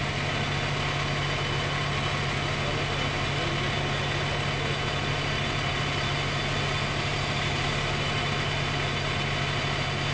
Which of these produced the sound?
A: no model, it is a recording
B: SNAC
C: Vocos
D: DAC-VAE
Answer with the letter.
A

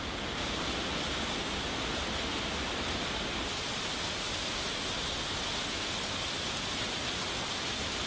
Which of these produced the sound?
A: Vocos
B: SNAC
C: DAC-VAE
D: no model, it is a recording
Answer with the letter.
D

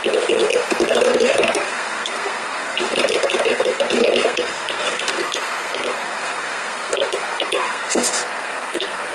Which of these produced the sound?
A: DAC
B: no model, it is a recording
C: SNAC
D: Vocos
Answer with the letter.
C